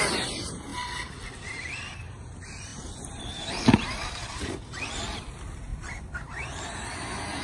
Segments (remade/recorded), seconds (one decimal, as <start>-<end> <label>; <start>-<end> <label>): 0.0-0.7 recorded; 0.7-1.7 remade; 1.7-2.7 recorded; 2.7-5.0 remade; 5.0-5.7 recorded; 5.7-6.6 remade; 6.6-7.4 recorded